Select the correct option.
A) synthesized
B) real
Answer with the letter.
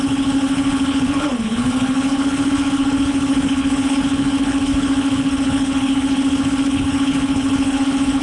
A